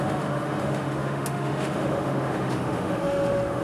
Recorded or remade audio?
remade